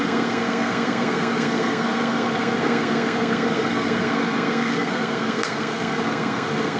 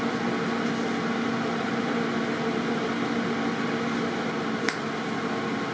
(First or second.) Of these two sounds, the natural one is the second